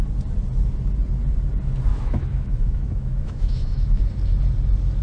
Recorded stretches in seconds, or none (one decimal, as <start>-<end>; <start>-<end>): 0.0-1.9; 4.0-5.0